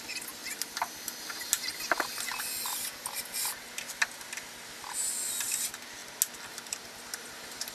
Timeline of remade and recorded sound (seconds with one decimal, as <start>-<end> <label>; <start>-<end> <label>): 0.0-7.7 recorded